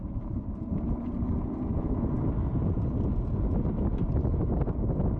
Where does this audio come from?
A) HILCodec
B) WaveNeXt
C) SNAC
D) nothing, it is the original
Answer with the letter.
D